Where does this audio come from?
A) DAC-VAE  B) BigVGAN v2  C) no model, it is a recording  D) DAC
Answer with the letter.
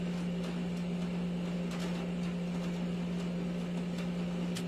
C